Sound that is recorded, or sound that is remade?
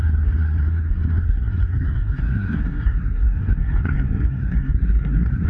remade